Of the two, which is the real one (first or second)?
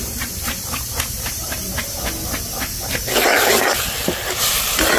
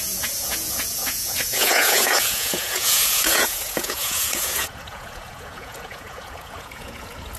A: first